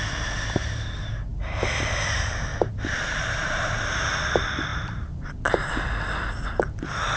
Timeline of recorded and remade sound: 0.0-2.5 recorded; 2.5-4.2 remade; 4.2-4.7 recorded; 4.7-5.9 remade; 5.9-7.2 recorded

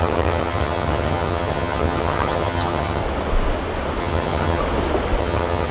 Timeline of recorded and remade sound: 0.0-3.0 remade; 3.0-4.0 recorded; 4.0-4.6 remade; 4.6-5.2 recorded; 5.2-5.7 remade

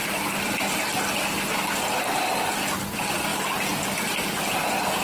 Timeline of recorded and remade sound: 0.0-5.0 recorded

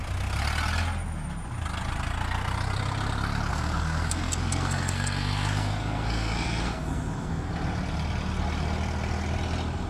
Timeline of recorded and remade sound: 0.0-3.5 recorded; 3.5-7.5 remade; 7.5-9.9 recorded